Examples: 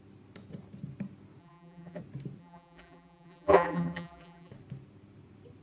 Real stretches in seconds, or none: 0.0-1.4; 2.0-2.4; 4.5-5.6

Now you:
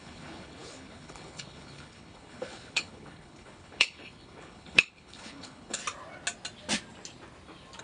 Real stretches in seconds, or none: 5.8-7.8

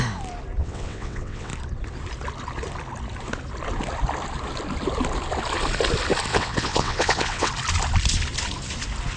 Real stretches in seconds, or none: 0.0-0.6; 1.5-6.3; 7.5-9.2

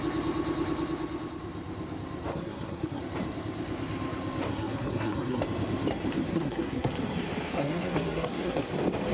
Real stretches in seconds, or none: 0.0-2.3; 3.0-4.5; 5.4-6.3; 6.9-7.5; 8.7-9.1